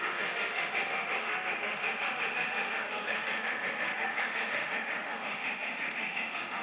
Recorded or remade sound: remade